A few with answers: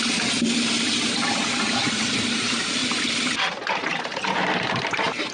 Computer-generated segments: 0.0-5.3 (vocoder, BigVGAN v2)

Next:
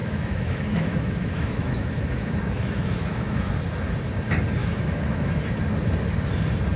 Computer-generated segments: 0.0-3.5 (autoencoder, DAC-VAE); 4.6-5.3

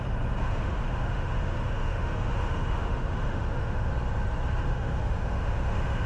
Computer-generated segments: 0.4-3.9 (autoencoder, DAC-VAE); 4.7-6.1

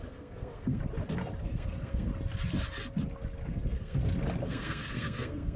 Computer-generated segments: 0.0-0.8 (codec, SNAC); 1.4-2.1; 3.5-4.0; 4.5-5.6

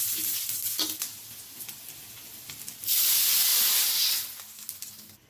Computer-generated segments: none

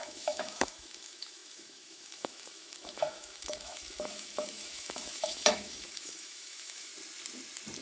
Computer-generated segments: 0.0-6.9 (autoencoder, DAC-VAE)